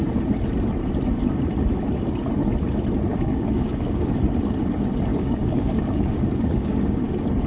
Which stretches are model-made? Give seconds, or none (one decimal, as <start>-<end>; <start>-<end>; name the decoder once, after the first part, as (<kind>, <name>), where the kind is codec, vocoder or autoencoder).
3.1-4.1 (codec, DAC); 5.1-7.0